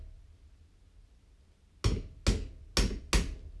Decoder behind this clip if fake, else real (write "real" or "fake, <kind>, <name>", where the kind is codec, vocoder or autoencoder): real